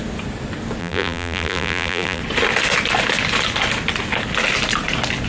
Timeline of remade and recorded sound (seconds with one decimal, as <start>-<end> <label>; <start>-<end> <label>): 0.0-0.8 recorded; 0.8-2.2 remade; 2.2-5.3 recorded